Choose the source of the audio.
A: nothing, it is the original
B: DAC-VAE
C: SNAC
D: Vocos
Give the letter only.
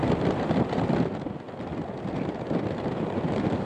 A